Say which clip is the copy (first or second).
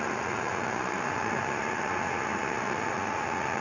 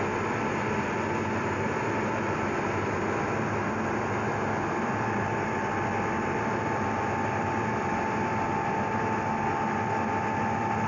first